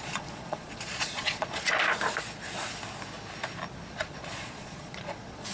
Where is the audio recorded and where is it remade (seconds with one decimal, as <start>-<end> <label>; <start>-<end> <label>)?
0.0-1.7 remade; 1.7-3.9 recorded; 3.9-5.5 remade

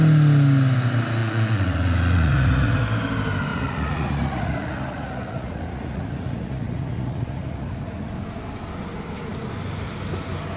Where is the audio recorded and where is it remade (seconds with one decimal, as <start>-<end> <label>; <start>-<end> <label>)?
0.0-1.2 recorded; 1.2-2.8 remade; 2.8-3.5 recorded; 3.5-8.1 remade; 8.1-10.6 recorded

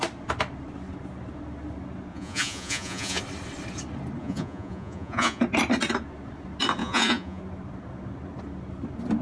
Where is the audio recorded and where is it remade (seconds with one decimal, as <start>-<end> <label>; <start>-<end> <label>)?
0.0-2.1 recorded; 2.1-3.2 remade; 3.2-4.2 recorded; 4.2-5.4 remade; 5.4-6.8 recorded; 6.8-7.4 remade; 7.4-9.2 recorded

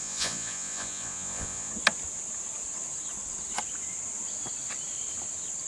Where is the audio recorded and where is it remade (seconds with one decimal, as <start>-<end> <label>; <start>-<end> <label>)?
0.0-1.7 remade; 1.7-5.7 recorded

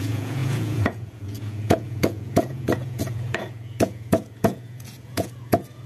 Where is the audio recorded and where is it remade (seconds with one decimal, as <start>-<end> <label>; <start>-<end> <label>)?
0.0-5.9 remade

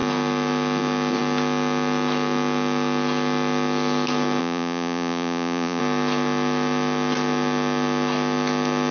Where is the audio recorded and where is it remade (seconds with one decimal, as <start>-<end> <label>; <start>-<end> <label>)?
0.0-4.4 recorded; 4.4-5.8 remade; 5.8-8.9 recorded